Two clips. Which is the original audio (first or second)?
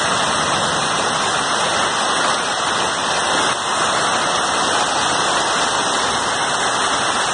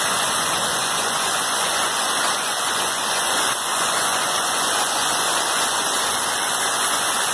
first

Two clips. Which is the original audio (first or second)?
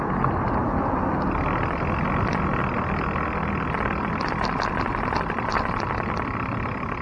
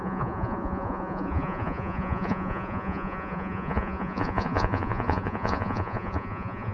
first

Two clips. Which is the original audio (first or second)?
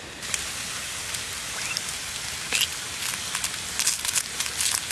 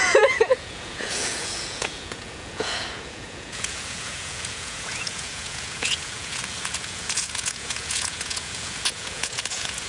first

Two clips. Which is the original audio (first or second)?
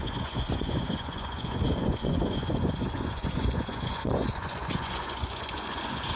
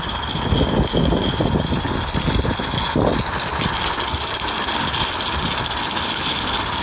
second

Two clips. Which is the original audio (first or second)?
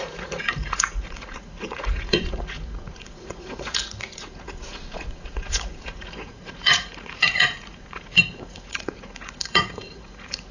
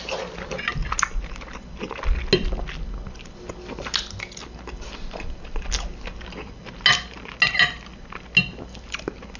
second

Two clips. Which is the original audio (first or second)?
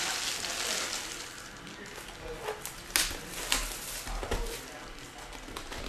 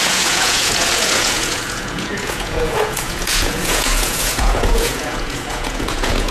first